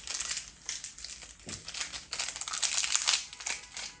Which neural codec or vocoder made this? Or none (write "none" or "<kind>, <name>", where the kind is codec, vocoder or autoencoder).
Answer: none